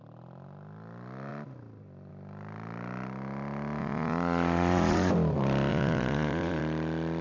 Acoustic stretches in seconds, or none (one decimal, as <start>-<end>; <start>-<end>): 0.0-3.8; 5.1-5.7; 6.6-7.2